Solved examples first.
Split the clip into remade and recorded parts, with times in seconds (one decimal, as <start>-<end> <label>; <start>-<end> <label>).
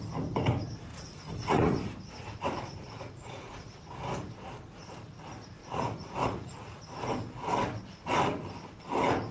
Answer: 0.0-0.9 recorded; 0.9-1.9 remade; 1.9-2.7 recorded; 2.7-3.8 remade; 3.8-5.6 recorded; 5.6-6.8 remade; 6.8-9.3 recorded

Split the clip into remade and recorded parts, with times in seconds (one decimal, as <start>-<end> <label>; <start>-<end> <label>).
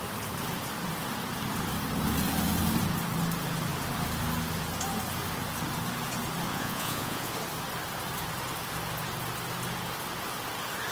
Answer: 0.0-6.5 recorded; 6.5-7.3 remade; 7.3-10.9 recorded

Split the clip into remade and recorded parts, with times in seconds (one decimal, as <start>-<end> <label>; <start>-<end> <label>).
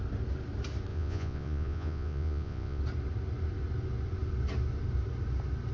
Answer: 0.0-0.9 recorded; 0.9-2.8 remade; 2.8-5.7 recorded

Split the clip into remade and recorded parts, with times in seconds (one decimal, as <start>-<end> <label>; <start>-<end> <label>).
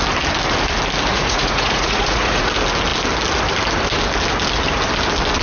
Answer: 0.0-1.1 recorded; 1.1-2.5 remade; 2.5-5.4 recorded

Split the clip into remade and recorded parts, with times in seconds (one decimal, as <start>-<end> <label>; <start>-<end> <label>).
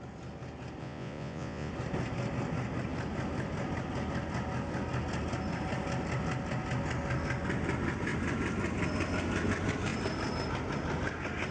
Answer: 0.0-0.8 recorded; 0.8-1.7 remade; 1.7-11.5 recorded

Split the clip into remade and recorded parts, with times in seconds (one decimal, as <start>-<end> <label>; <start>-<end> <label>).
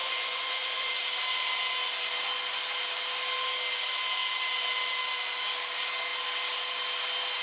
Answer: 0.0-0.9 remade; 0.9-7.4 recorded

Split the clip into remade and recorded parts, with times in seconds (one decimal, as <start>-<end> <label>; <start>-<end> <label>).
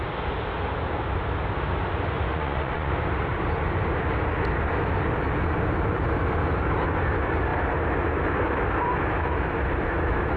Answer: 0.0-2.3 recorded; 2.3-2.9 remade; 2.9-10.4 recorded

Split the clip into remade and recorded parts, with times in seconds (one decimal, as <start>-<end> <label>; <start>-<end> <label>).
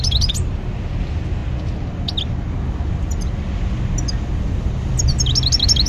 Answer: 0.0-5.9 recorded